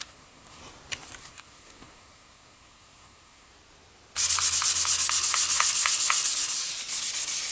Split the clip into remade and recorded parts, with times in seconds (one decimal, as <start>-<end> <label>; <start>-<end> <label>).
0.0-0.6 remade; 0.6-1.2 recorded; 1.2-3.5 remade; 3.5-7.5 recorded